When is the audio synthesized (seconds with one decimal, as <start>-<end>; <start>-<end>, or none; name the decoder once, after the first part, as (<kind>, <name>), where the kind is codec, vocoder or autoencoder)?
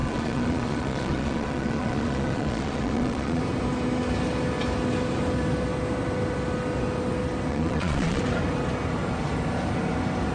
0.0-3.4 (vocoder, Vocos); 7.5-8.2